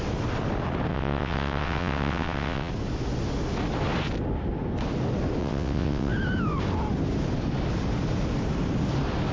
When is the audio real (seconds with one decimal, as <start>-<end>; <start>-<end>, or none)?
0.0-0.9; 2.7-5.4; 6.1-9.3